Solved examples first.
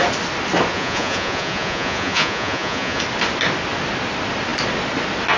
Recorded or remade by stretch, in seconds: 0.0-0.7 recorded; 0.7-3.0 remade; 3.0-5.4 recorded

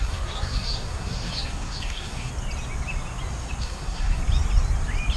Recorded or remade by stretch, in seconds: 0.0-2.3 remade; 2.3-3.6 recorded; 3.6-4.2 remade; 4.2-5.2 recorded